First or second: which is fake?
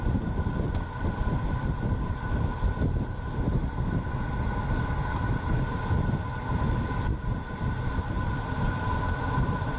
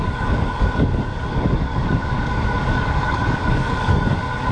second